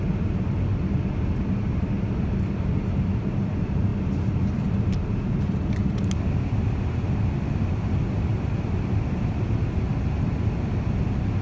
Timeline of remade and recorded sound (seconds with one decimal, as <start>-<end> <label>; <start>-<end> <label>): 0.0-11.4 recorded